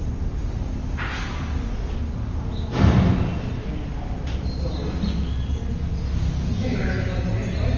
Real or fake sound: real